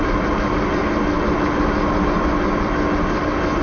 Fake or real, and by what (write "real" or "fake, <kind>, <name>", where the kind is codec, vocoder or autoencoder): real